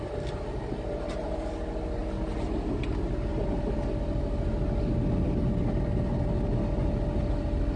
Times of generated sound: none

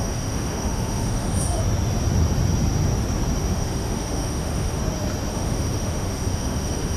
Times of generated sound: 0.0-1.6 (autoencoder, DAC-VAE); 3.4-4.8; 5.3-7.0

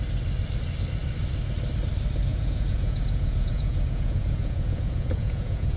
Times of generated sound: 2.3-5.8 (vocoder, Vocos)